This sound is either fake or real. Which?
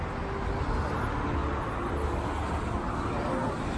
real